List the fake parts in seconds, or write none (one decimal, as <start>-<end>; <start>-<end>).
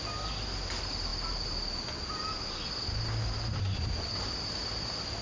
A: none